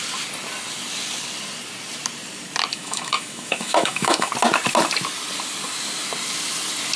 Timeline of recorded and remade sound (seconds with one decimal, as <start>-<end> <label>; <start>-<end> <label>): 0.0-2.7 recorded; 2.7-4.3 remade; 4.3-7.0 recorded